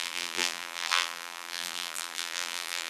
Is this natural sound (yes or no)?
no